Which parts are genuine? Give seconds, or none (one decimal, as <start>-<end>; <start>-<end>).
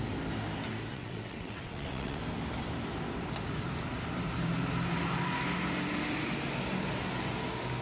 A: 0.0-0.9; 2.2-7.8